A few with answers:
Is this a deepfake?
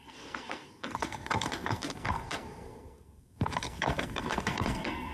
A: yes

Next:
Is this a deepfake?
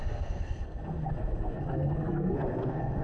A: yes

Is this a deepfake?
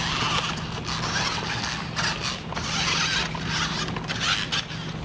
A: no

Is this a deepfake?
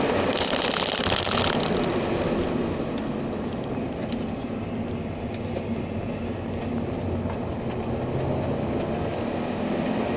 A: no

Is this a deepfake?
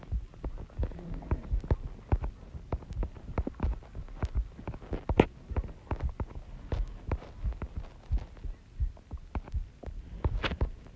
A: no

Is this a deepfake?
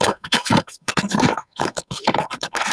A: yes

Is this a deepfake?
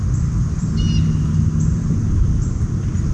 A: no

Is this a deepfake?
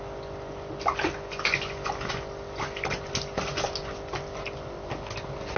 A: no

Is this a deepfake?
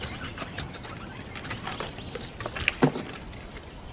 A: no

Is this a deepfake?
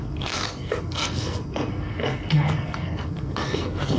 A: yes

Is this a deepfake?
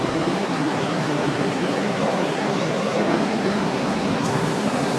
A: yes